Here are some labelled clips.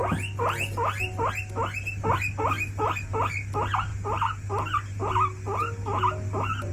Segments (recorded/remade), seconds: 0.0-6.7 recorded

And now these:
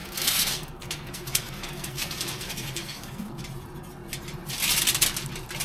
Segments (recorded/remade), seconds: 0.0-3.4 remade; 3.4-5.6 recorded

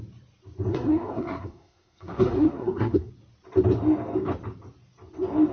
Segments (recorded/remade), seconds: 0.0-0.7 recorded; 0.7-3.1 remade; 3.1-5.5 recorded

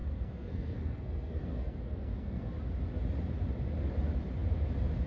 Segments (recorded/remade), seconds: 0.0-2.5 remade; 2.5-5.1 recorded

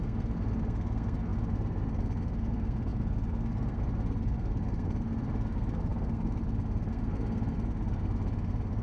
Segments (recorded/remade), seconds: 0.0-8.8 remade

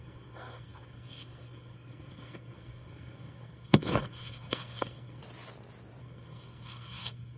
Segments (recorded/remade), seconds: 0.0-5.2 remade; 5.2-6.0 recorded; 6.0-7.4 remade

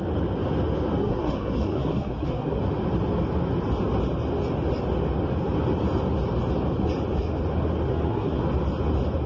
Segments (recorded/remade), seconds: 0.0-1.0 recorded; 1.0-2.6 remade; 2.6-7.9 recorded; 7.9-8.4 remade; 8.4-9.3 recorded

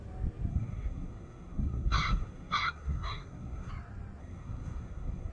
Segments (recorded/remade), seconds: 0.0-0.5 recorded; 0.5-3.7 remade; 3.7-4.2 recorded; 4.2-5.3 remade